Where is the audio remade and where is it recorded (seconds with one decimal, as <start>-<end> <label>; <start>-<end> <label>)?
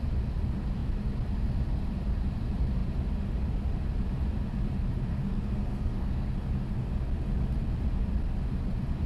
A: 0.0-5.1 recorded; 5.1-6.3 remade; 6.3-9.1 recorded